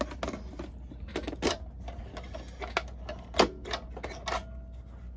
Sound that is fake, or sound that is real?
real